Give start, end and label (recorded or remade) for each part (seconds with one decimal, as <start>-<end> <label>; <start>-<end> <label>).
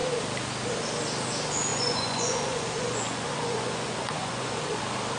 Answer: 0.0-1.7 recorded; 1.7-4.8 remade; 4.8-5.2 recorded